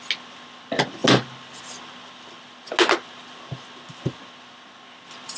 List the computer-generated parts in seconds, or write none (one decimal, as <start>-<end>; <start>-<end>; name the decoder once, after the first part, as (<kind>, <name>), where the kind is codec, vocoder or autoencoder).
none